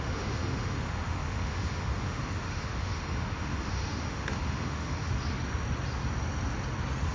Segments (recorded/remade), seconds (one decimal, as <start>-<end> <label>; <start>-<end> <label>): 0.0-5.1 remade; 5.1-7.1 recorded